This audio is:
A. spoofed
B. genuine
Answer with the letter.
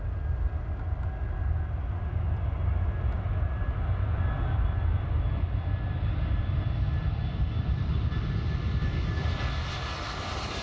B